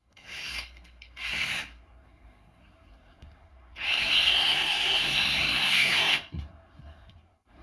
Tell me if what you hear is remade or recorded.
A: remade